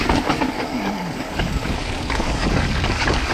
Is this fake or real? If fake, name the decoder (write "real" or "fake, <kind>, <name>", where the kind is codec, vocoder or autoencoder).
fake, codec, DAC